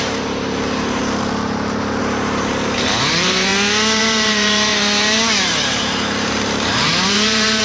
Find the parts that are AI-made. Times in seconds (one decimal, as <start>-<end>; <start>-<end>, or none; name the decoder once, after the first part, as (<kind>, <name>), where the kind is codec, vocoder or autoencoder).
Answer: 0.0-1.0 (vocoder, BigVGAN v2); 2.0-3.5; 4.0-7.6